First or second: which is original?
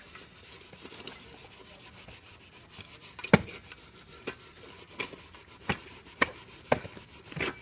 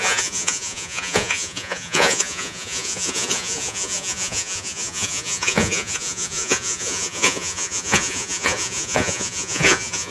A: first